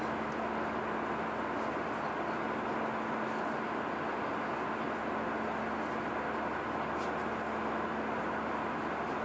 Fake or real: real